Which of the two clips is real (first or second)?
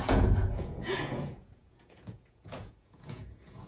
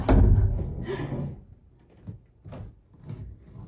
second